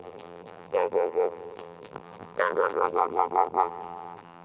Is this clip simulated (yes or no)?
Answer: yes